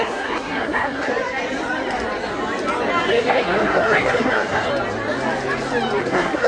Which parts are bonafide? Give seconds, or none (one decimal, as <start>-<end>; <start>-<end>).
1.1-3.1; 4.7-6.0